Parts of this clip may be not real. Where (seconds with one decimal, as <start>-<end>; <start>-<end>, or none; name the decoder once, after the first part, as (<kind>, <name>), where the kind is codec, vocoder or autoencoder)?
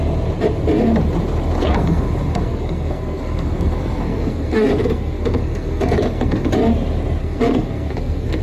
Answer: 1.6-6.5 (codec, SNAC); 7.2-8.4